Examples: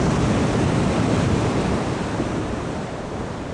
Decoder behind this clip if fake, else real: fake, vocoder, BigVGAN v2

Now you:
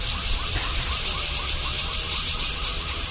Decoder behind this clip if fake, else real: real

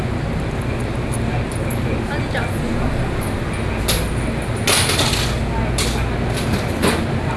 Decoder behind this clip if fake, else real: real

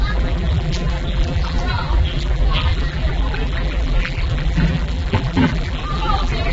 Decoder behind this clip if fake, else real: fake, vocoder, BigVGAN v2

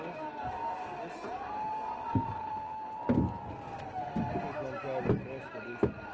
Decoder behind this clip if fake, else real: real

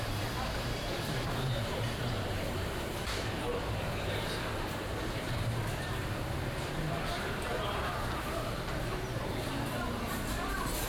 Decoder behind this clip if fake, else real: fake, vocoder, BigVGAN v2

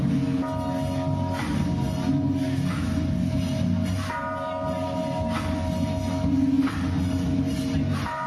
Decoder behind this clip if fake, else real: real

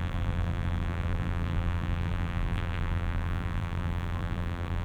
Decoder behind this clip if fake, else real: fake, vocoder, BigVGAN v2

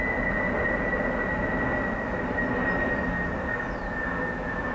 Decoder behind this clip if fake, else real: real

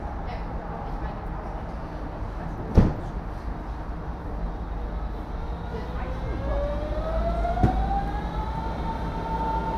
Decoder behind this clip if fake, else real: real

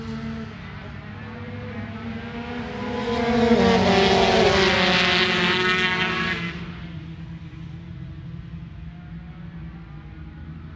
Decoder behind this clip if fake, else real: real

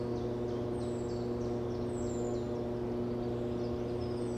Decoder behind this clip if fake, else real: real